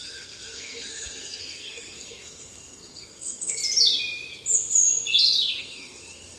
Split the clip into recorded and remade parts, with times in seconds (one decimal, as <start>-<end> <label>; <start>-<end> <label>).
0.0-3.6 remade; 3.6-5.6 recorded; 5.6-6.4 remade